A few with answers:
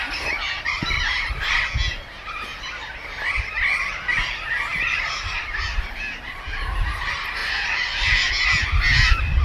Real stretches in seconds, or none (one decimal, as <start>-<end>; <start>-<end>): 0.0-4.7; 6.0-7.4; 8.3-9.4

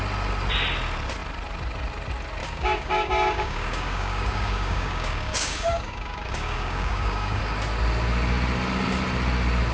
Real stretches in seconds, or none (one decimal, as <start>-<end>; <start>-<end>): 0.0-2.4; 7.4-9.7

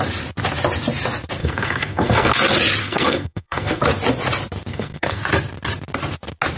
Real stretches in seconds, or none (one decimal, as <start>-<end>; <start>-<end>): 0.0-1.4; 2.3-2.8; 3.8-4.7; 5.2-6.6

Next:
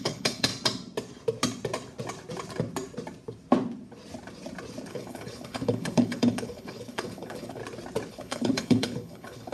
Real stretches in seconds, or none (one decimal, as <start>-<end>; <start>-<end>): 0.5-4.9; 7.6-8.1

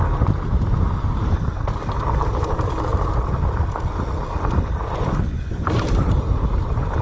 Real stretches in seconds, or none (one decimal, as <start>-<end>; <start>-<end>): 2.9-4.5

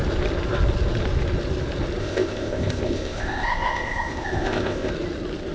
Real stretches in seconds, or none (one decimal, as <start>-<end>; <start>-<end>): 0.0-2.0; 4.9-5.5